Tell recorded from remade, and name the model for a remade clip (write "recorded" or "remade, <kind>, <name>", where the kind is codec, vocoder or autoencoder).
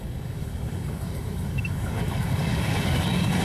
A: remade, codec, DAC